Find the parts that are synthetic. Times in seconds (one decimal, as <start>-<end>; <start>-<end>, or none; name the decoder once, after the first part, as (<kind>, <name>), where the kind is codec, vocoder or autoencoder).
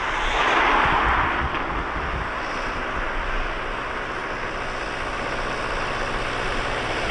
none